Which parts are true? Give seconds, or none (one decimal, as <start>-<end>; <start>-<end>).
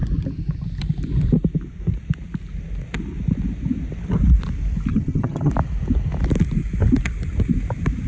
0.0-4.9; 5.5-8.1